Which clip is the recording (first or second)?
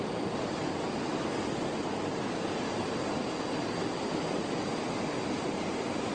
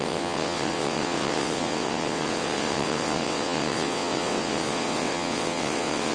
first